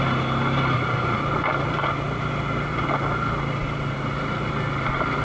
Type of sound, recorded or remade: recorded